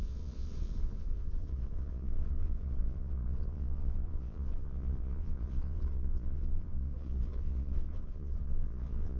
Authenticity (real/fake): fake